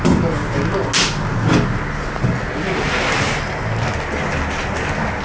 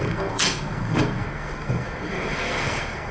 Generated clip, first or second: second